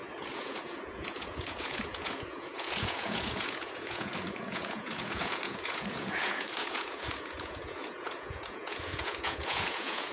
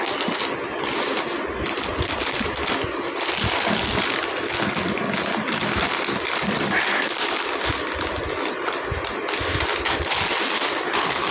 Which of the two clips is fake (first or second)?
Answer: first